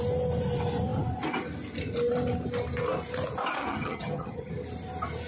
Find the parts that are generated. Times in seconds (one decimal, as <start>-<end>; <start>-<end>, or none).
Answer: 3.6-4.5